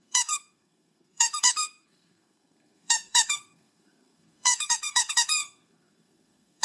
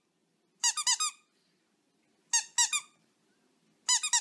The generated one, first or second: first